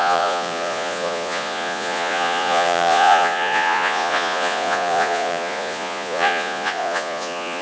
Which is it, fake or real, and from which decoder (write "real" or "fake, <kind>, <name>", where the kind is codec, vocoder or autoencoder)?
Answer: fake, vocoder, Vocos